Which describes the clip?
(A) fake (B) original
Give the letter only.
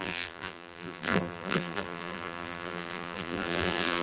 A